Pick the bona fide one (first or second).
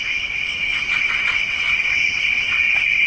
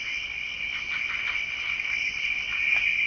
second